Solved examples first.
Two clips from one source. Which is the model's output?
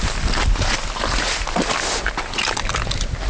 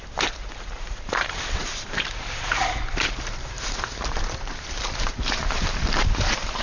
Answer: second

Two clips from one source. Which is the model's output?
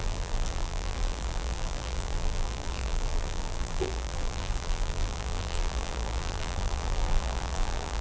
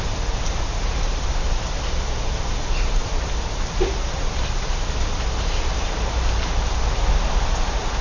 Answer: first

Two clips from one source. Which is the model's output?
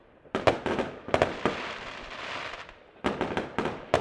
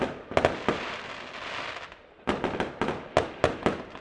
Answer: first